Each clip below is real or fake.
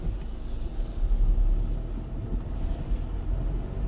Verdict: real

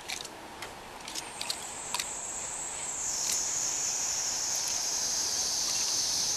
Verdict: fake